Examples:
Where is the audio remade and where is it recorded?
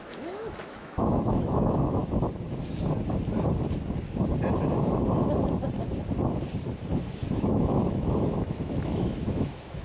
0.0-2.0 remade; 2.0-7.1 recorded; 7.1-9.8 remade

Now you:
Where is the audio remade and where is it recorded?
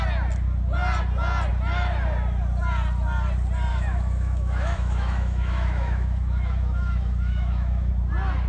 0.0-3.7 recorded; 3.7-7.9 remade; 7.9-8.5 recorded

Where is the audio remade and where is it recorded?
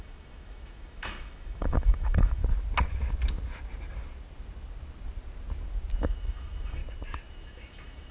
0.0-2.4 remade; 2.4-6.0 recorded; 6.0-6.8 remade; 6.8-7.3 recorded; 7.3-8.1 remade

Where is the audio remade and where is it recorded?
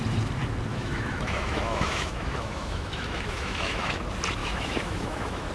0.0-0.7 recorded; 0.7-4.0 remade; 4.0-4.4 recorded; 4.4-5.5 remade